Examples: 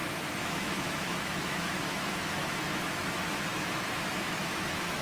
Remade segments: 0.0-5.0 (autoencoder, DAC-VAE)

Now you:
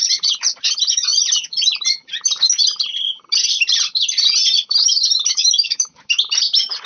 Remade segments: 5.3-6.1 (autoencoder, DAC-VAE)

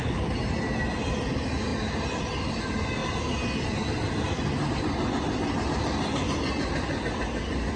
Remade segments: none

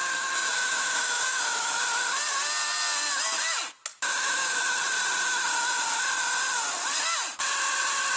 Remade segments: 0.0-1.8 (autoencoder, DAC-VAE); 3.9-4.8

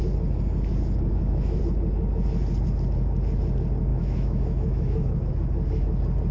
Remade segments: 1.1-1.6 (autoencoder, DAC-VAE); 3.9-5.3

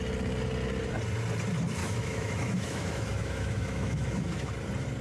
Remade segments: 1.8-4.5 (autoencoder, DAC-VAE)